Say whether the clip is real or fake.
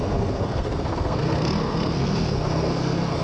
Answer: fake